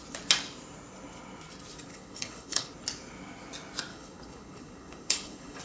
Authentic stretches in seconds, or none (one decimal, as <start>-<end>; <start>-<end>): 0.0-1.9; 2.7-3.9